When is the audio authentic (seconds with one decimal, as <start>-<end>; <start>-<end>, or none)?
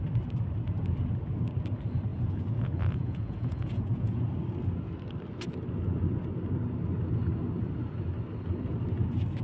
0.0-2.1; 4.2-9.4